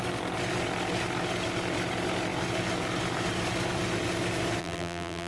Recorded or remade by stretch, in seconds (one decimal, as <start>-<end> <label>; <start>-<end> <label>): 0.0-4.6 recorded; 4.6-5.3 remade